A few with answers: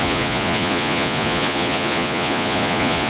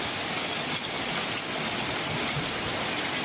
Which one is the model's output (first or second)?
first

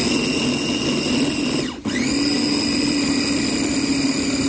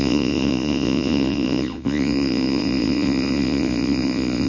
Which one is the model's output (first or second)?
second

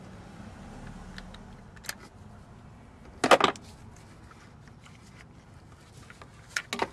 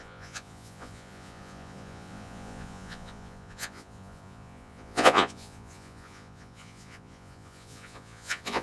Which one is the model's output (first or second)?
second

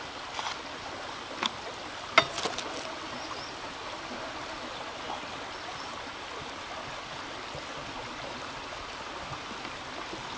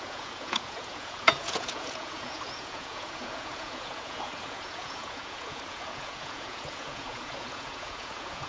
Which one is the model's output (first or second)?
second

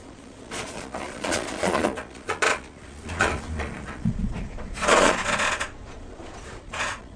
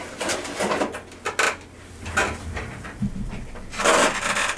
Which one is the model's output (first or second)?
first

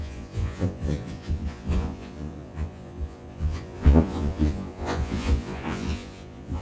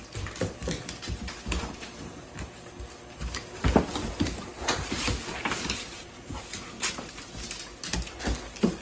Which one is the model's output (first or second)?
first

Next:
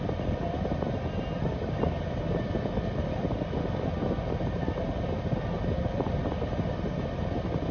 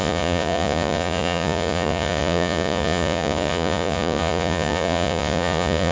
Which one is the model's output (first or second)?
second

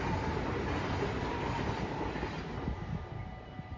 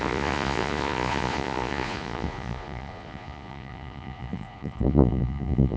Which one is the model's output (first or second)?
second